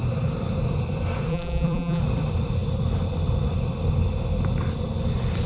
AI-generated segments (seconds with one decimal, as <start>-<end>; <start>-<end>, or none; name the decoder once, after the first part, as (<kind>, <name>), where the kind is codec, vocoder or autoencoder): 1.3-2.0 (vocoder, BigVGAN v2)

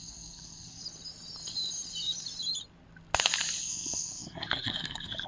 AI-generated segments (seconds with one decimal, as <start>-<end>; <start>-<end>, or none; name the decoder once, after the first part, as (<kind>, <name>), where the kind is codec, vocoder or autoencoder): 0.0-0.8 (codec, SNAC); 3.6-5.3

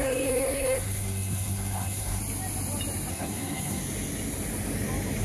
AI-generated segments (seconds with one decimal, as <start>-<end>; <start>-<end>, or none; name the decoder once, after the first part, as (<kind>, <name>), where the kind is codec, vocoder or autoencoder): 0.0-2.2 (codec, SNAC); 3.1-3.8

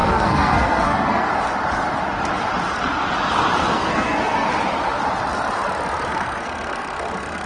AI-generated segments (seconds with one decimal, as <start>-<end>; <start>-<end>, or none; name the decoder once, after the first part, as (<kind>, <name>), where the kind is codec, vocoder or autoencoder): 0.0-1.3 (codec, SNAC); 3.7-4.5; 6.1-7.5

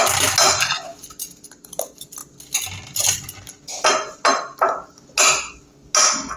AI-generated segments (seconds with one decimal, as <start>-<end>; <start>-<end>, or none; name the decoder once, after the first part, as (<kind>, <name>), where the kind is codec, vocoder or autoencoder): none

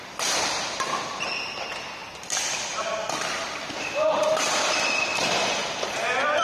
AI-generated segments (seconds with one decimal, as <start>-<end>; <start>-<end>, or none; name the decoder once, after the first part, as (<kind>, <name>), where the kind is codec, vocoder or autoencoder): none

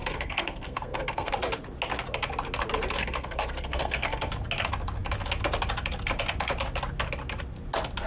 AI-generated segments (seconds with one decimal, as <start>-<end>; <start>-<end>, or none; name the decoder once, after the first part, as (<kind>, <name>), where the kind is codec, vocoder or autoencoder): 0.0-1.3 (codec, SNAC); 3.0-4.3